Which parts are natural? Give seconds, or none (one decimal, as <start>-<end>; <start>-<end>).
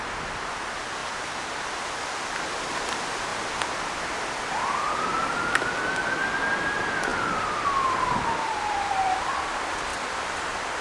0.0-1.0; 1.6-7.1; 9.4-9.9